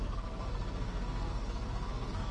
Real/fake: fake